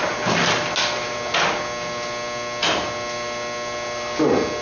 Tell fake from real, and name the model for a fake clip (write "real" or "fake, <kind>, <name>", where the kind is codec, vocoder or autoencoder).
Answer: real